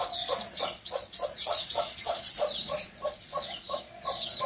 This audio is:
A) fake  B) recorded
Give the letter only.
A